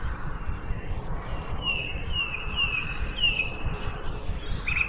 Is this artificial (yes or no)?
no